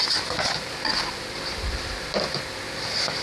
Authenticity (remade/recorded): recorded